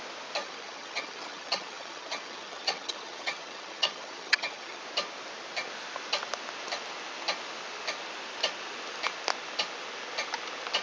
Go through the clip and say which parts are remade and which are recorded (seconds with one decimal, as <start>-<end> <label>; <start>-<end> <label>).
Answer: 0.0-0.4 recorded; 0.4-4.8 remade; 4.8-10.8 recorded